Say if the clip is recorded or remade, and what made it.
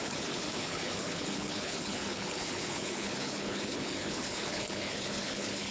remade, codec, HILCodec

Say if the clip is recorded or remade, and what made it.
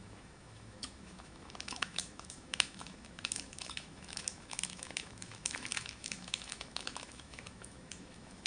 remade, autoencoder, DAC-VAE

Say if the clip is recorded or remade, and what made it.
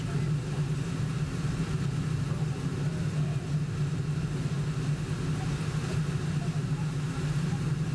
recorded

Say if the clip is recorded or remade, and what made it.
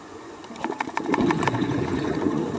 remade, vocoder, Vocos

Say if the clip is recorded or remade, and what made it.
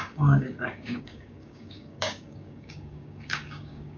remade, codec, DAC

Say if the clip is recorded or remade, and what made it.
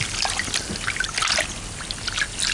recorded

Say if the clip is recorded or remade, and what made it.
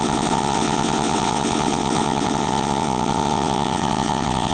remade, vocoder, WaveNeXt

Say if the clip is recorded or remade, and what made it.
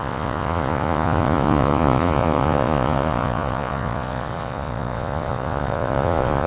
remade, vocoder, Vocos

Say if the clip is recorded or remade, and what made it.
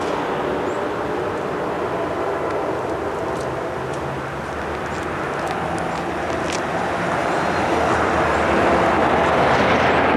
recorded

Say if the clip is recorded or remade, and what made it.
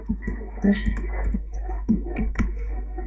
remade, codec, SNAC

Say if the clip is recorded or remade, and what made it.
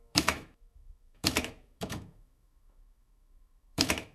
remade, autoencoder, DAC-VAE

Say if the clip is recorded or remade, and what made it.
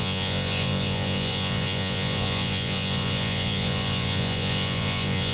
remade, vocoder, Vocos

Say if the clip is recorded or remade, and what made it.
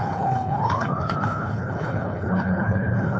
remade, codec, HILCodec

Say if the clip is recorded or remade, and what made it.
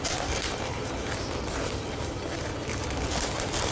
remade, vocoder, BigVGAN v2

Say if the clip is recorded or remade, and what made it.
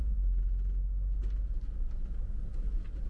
recorded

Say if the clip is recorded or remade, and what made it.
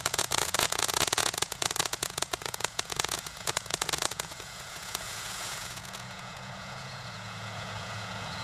remade, vocoder, Vocos